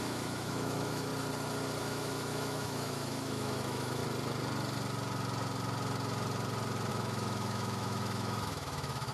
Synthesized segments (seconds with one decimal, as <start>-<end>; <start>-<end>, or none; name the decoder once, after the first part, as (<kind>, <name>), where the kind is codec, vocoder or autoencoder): 0.0-1.1 (autoencoder, DAC-VAE); 1.8-4.0; 6.9-9.1